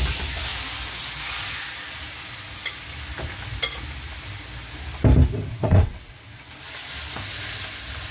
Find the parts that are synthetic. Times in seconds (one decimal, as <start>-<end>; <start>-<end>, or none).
5.5-6.5